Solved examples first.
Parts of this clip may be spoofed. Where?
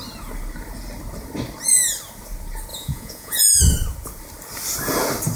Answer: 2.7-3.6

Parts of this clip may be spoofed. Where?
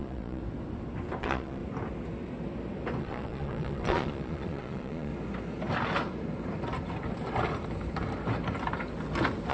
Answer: 0.0-0.4; 1.2-1.6; 3.0-5.1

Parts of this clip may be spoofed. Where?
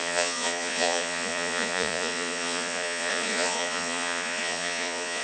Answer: 0.0-5.2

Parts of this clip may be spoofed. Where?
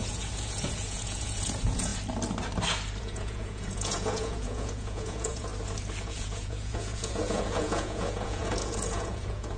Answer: 0.0-1.9; 3.0-5.5; 6.0-9.6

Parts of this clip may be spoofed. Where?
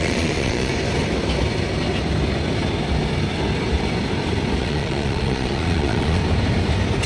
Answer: 0.0-0.7; 4.6-6.2